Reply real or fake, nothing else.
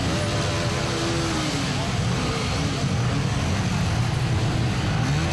real